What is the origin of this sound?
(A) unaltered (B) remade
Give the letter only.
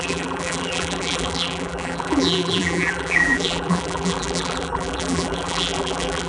B